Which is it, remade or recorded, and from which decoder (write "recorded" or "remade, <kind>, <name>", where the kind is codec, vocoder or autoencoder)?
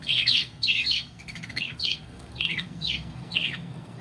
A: remade, codec, SNAC